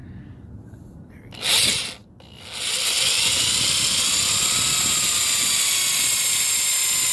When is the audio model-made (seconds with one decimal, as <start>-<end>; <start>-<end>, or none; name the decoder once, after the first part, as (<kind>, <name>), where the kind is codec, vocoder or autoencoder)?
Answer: none